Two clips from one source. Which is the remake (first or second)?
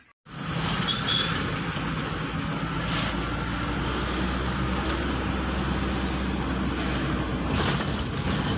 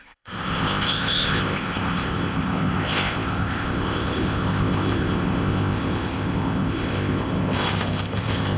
second